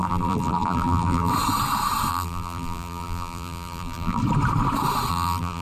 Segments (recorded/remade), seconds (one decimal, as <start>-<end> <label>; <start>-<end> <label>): 0.0-1.3 remade; 1.3-2.1 recorded; 2.1-4.2 remade; 4.2-5.1 recorded; 5.1-5.6 remade